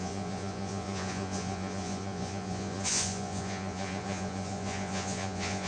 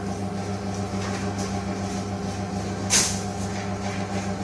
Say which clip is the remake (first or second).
first